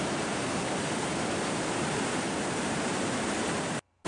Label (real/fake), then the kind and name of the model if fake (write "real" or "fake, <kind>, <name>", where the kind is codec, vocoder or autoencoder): fake, vocoder, BigVGAN v2